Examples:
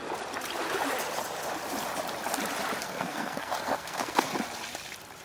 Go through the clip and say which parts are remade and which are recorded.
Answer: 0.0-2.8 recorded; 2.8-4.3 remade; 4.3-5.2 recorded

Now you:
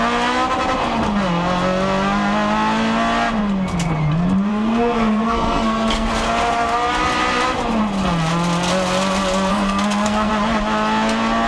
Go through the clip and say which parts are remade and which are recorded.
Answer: 0.0-4.5 recorded; 4.5-6.1 remade; 6.1-9.5 recorded; 9.5-10.3 remade; 10.3-11.5 recorded

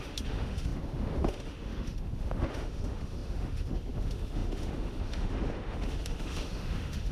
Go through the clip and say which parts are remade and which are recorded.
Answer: 0.0-7.1 remade

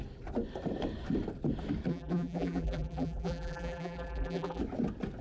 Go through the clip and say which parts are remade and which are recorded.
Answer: 0.0-1.9 recorded; 1.9-4.6 remade; 4.6-5.2 recorded

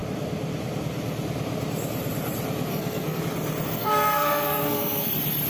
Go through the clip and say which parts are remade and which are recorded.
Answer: 0.0-2.7 recorded; 2.7-3.2 remade; 3.2-3.7 recorded; 3.7-5.1 remade; 5.1-5.5 recorded